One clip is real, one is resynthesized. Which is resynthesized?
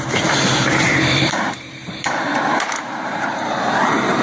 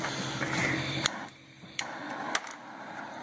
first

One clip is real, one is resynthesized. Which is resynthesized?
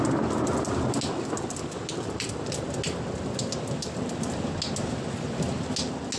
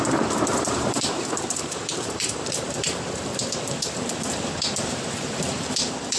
second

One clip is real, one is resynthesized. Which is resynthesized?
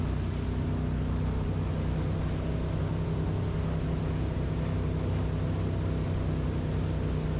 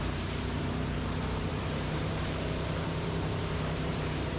second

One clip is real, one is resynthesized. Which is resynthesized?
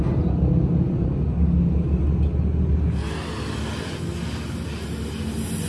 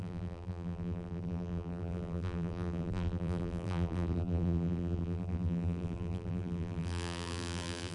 second